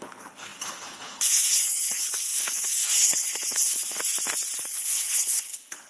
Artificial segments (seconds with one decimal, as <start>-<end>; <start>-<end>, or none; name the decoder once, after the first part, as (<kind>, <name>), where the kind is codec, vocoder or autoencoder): 0.0-4.0 (codec, HILCodec); 4.7-5.9